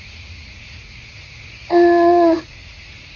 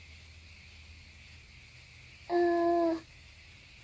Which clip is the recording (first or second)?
second